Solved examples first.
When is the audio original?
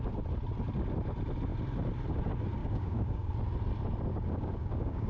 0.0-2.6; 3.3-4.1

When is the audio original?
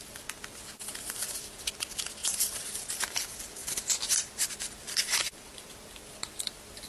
0.0-2.2; 2.8-6.9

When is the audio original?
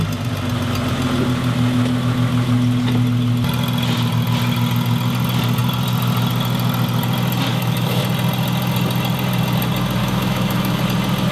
0.0-7.5; 8.0-10.0; 10.8-11.3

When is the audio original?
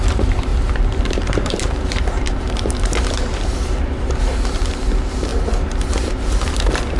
none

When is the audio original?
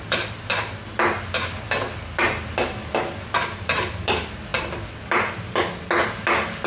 0.0-6.7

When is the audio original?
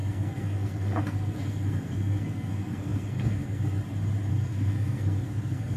3.8-4.3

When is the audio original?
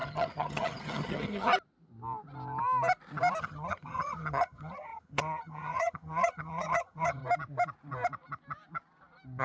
1.5-3.4; 7.2-9.4